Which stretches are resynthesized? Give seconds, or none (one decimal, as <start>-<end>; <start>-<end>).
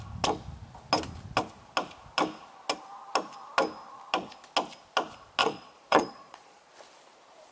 5.4-6.7